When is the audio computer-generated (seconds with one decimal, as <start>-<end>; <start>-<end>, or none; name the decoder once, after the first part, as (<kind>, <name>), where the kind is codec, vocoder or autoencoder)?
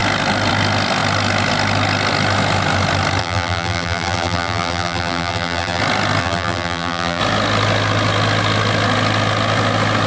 3.2-5.8 (vocoder, BigVGAN v2); 6.2-7.2